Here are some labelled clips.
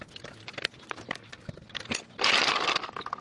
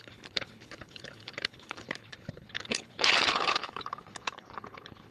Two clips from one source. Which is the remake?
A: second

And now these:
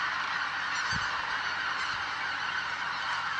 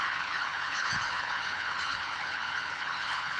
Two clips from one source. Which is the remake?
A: second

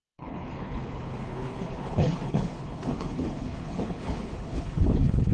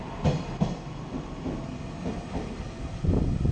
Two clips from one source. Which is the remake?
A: first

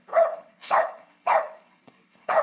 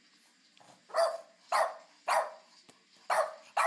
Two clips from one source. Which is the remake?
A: first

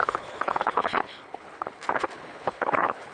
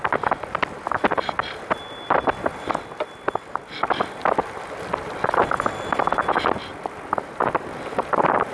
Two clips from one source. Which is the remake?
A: first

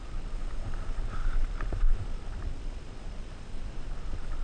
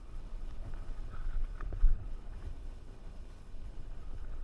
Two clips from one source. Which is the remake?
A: second